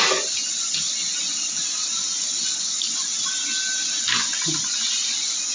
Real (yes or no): yes